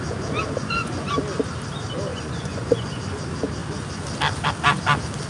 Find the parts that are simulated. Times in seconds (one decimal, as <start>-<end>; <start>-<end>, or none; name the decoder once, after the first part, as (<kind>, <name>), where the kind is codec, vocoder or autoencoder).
0.6-1.1 (vocoder, Vocos); 2.1-3.0